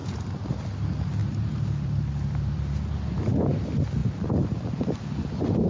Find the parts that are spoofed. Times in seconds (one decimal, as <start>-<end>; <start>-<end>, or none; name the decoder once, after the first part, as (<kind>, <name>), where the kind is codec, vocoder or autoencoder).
0.0-0.6 (vocoder, BigVGAN v2); 1.2-2.9

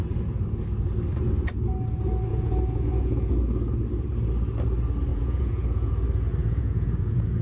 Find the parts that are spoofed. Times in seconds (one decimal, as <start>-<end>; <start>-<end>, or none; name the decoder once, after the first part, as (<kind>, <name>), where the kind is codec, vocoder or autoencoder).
2.3-3.3 (vocoder, Vocos); 5.1-5.9; 6.4-7.4